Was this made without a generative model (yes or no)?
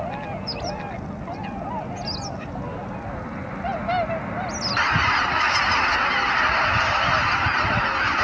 yes